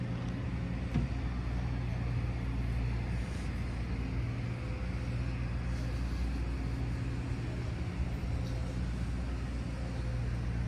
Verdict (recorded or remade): recorded